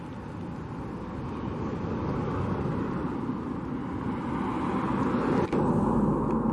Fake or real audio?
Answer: real